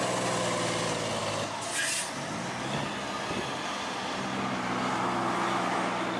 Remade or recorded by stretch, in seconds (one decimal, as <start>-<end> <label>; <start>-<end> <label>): 0.0-6.2 recorded